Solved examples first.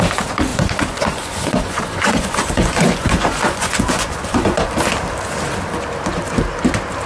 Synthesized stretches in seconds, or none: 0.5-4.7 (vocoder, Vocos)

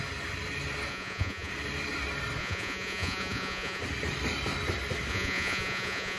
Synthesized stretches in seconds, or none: 0.9-1.5 (vocoder, Vocos); 2.4-3.8; 5.1-6.2